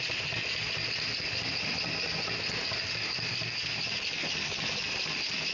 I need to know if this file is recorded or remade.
recorded